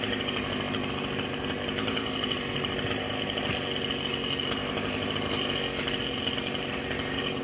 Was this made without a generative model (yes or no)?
yes